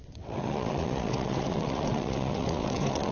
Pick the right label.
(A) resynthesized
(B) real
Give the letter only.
A